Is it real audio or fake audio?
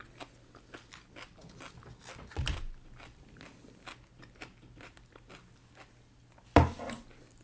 real